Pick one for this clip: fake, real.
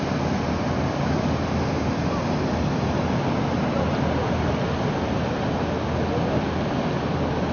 real